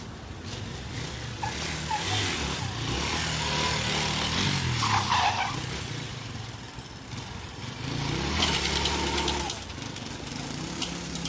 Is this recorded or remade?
recorded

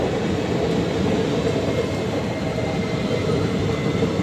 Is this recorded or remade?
recorded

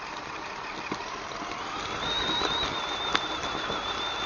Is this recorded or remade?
recorded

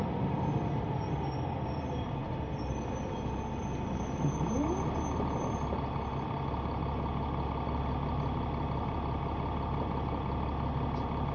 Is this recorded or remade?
recorded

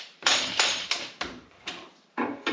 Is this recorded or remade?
remade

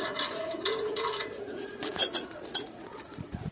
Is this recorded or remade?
remade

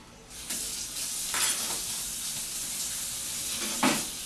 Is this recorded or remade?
recorded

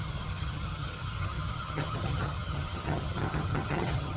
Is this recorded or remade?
remade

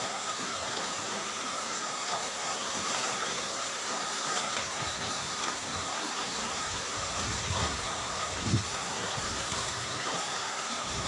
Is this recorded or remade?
remade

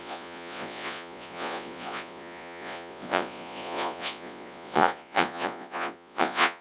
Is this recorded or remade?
remade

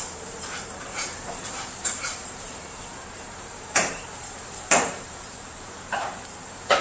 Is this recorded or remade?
remade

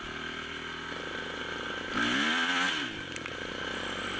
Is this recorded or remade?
recorded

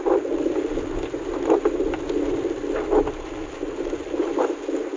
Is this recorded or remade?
recorded